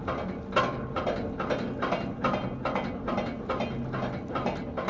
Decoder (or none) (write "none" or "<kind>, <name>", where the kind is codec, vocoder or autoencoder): none